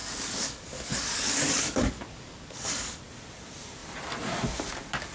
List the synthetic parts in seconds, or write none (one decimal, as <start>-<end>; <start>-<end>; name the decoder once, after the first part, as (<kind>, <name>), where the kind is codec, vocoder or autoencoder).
0.0-3.1 (codec, DAC)